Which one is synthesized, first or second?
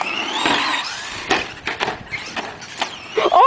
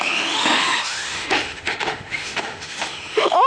second